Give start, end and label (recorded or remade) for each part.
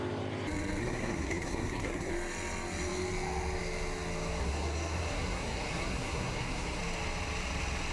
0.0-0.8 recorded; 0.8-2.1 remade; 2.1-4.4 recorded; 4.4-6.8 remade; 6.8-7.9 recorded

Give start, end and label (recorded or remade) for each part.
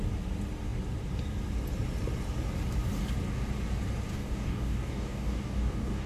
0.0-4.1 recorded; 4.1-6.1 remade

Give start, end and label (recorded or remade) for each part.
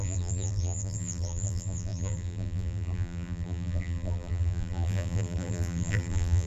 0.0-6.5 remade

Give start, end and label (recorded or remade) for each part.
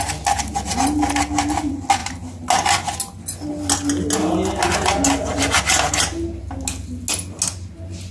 0.0-8.1 recorded